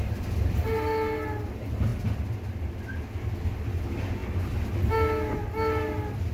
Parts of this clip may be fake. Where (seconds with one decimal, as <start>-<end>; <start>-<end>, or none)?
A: none